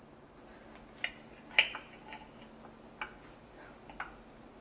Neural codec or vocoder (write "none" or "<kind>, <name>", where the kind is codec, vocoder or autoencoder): none